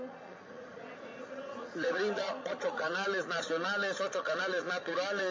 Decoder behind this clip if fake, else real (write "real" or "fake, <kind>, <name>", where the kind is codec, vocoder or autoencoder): fake, vocoder, Vocos